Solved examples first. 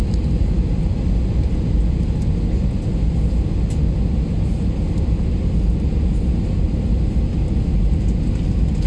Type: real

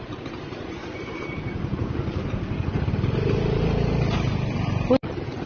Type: fake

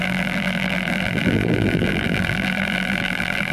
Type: fake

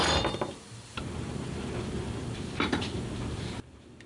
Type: fake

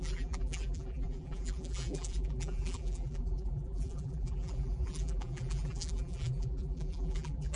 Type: fake